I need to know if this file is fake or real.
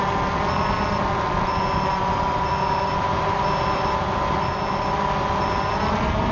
real